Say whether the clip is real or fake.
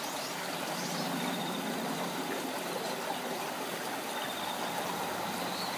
real